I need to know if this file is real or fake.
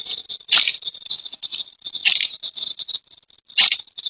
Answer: real